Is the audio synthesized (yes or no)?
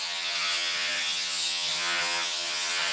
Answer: yes